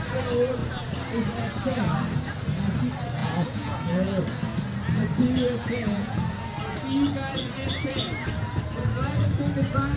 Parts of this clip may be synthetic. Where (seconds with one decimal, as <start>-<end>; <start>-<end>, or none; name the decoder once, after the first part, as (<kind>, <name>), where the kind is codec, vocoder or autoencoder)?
3.2-4.2 (vocoder, Vocos); 5.6-6.2